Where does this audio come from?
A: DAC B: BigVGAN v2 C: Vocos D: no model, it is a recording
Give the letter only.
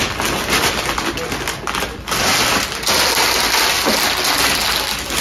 D